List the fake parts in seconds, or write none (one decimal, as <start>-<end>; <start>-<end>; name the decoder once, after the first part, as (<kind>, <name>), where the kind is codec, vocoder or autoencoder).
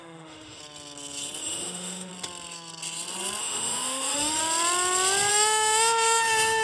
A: 0.0-0.6 (autoencoder, DAC-VAE); 1.4-2.1; 3.4-4.4; 5.3-6.6